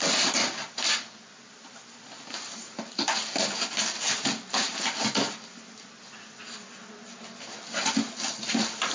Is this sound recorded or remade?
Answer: recorded